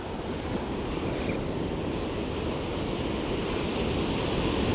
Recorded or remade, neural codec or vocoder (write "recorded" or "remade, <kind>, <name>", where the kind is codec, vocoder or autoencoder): recorded